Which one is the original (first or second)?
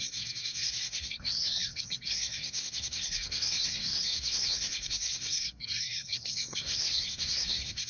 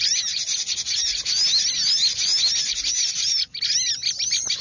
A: second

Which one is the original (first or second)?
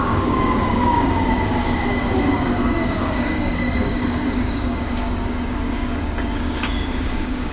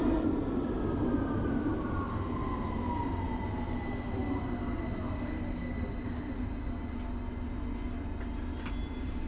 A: second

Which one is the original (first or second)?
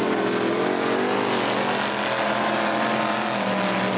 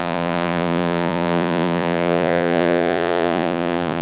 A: first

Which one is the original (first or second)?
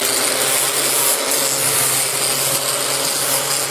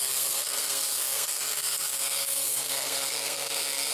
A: first